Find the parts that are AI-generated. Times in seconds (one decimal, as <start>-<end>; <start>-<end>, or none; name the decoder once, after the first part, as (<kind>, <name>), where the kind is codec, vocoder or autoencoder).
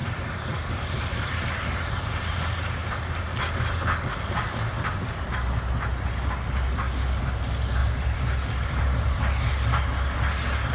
0.0-1.9 (vocoder, BigVGAN v2); 7.8-9.2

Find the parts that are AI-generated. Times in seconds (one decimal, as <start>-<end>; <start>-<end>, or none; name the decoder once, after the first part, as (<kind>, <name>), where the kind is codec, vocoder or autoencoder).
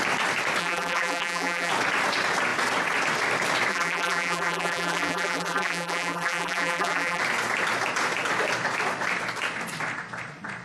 0.6-1.7 (vocoder, BigVGAN v2); 3.7-7.2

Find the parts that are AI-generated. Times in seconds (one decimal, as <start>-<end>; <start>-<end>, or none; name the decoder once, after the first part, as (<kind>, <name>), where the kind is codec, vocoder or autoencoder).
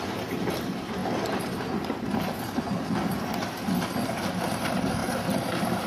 0.0-1.0 (vocoder, BigVGAN v2); 4.5-5.9